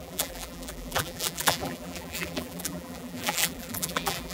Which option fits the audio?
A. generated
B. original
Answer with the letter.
A